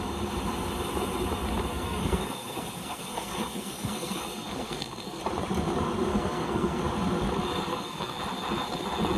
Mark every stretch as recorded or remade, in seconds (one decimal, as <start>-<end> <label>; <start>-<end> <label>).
0.0-1.7 recorded; 1.7-5.2 remade; 5.2-6.1 recorded; 6.1-6.8 remade; 6.8-7.7 recorded; 7.7-8.2 remade; 8.2-9.2 recorded

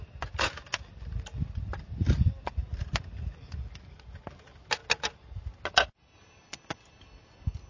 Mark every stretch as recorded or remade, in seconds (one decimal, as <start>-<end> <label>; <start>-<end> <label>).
0.0-7.7 recorded

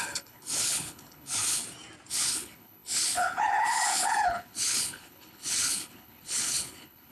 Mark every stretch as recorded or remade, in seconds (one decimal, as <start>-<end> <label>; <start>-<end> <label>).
0.0-1.6 remade; 1.6-2.1 recorded; 2.1-7.1 remade

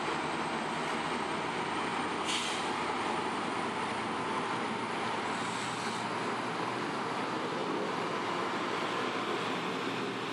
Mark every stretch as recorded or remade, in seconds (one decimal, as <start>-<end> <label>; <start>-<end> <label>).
0.0-10.3 recorded

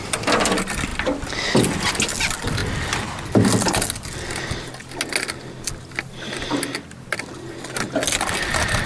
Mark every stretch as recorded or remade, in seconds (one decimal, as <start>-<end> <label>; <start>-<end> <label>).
0.0-8.9 recorded

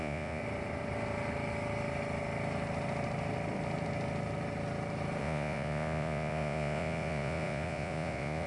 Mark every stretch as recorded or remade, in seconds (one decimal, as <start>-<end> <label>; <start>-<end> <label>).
0.0-0.4 remade; 0.4-5.2 recorded; 5.2-8.5 remade

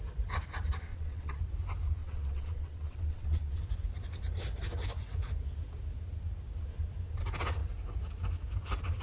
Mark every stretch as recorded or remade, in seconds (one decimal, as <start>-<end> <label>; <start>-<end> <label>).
0.0-0.9 recorded; 0.9-1.4 remade; 1.4-2.0 recorded; 2.0-3.6 remade; 3.6-9.0 recorded